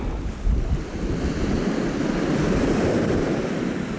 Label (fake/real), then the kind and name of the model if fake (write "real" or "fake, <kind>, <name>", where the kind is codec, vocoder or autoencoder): real